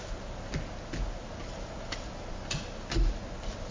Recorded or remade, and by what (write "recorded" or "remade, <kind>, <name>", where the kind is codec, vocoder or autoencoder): recorded